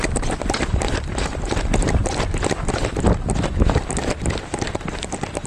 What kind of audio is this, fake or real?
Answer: real